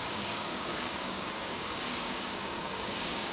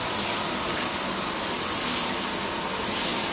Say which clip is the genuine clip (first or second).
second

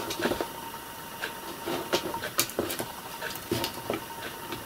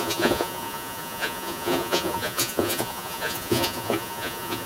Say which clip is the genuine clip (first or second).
first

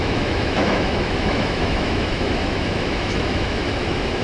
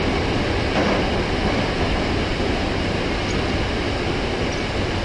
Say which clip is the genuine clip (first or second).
second